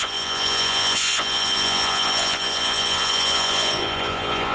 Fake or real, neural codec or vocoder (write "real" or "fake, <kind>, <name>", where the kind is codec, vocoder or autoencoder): fake, vocoder, Vocos